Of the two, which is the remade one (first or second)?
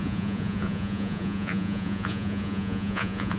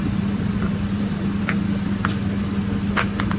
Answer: first